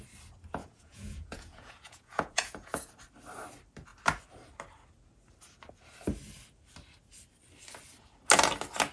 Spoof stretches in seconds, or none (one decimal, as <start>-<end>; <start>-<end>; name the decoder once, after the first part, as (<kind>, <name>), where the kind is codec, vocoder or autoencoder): 0.6-2.9 (vocoder, Vocos)